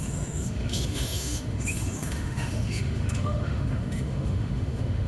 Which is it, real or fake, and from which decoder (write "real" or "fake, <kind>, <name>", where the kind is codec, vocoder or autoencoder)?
fake, autoencoder, DAC-VAE